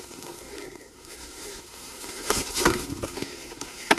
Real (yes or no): no